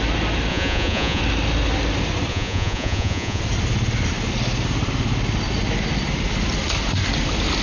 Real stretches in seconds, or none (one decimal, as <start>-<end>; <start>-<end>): 0.0-0.5; 1.2-2.3; 3.4-7.6